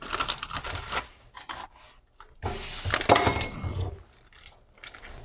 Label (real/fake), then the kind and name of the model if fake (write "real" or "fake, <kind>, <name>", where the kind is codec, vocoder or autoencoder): real